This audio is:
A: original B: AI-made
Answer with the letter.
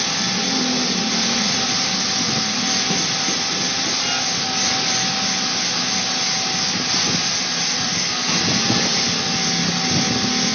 A